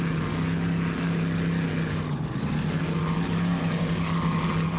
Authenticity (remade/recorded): recorded